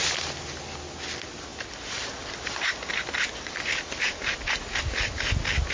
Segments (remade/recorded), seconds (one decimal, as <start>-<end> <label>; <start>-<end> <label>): 0.0-1.5 recorded; 1.5-4.3 remade; 4.3-5.7 recorded

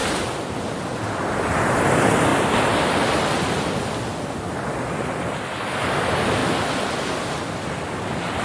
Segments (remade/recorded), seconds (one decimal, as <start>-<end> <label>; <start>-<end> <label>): 0.0-1.9 remade; 1.9-8.4 recorded

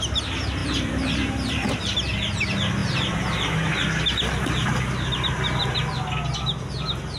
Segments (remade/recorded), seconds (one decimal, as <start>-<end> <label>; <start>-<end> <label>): 0.0-0.6 recorded; 0.6-1.8 remade; 1.8-7.2 recorded

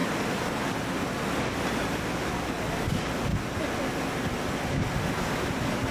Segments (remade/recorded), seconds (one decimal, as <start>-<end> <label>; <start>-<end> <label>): 0.0-5.9 recorded